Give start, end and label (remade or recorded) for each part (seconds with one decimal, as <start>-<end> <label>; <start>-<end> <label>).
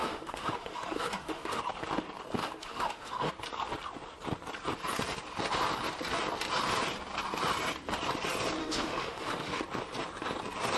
0.0-1.6 remade; 1.6-2.4 recorded; 2.4-3.3 remade; 3.3-8.6 recorded; 8.6-9.6 remade; 9.6-10.8 recorded